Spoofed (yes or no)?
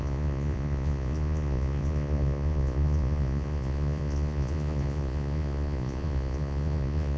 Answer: yes